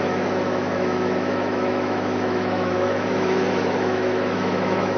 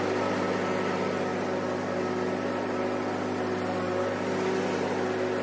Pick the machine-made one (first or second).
first